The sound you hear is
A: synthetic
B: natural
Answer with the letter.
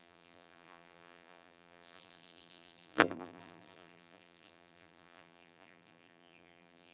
A